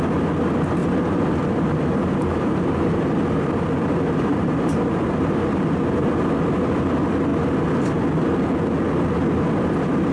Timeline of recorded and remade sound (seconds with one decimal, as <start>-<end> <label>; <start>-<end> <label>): 0.0-0.8 recorded; 0.8-6.1 remade; 6.1-10.1 recorded